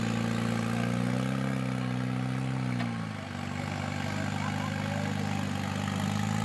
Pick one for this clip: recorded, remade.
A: recorded